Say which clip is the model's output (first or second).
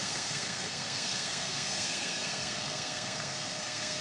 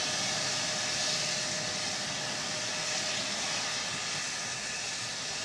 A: first